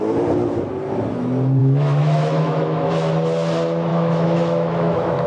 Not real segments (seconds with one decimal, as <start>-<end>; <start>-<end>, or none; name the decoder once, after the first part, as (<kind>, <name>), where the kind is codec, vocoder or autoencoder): 1.6-2.9 (autoencoder, DAC-VAE); 3.9-5.3